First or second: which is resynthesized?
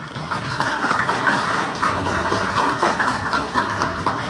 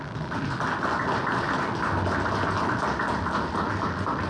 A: first